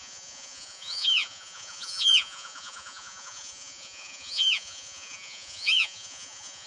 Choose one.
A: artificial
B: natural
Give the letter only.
A